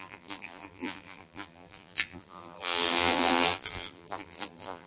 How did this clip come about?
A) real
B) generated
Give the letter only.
B